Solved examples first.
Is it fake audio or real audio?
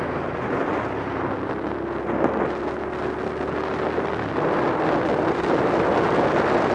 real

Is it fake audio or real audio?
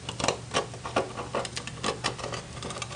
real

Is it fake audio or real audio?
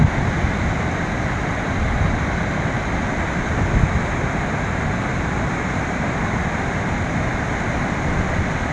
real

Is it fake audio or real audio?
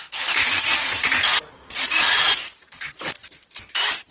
fake